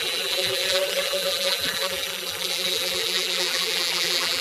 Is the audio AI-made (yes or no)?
yes